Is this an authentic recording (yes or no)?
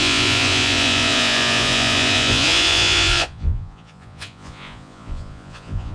no